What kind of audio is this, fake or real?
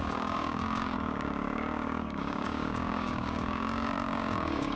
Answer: fake